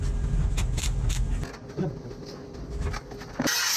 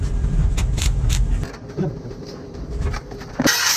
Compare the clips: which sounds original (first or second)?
first